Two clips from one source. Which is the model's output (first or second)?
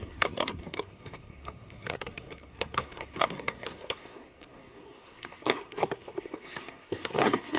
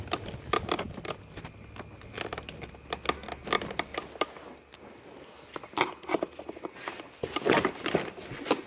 first